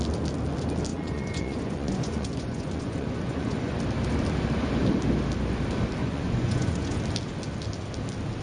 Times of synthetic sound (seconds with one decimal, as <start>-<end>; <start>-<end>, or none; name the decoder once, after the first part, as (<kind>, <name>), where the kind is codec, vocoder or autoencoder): 0.9-3.8 (vocoder, Vocos); 6.0-7.0

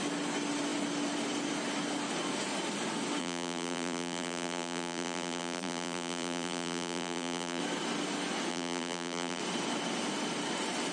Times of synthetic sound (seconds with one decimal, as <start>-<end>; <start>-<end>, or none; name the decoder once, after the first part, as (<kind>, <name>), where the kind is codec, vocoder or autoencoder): 3.2-7.6 (vocoder, BigVGAN v2); 8.5-9.4

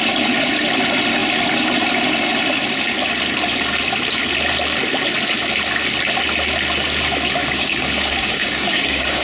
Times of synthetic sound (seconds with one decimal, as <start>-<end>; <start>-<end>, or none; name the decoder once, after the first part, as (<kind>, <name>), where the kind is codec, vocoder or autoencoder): 7.4-9.2 (codec, DAC)